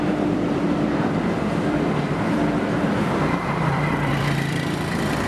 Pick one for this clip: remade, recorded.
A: remade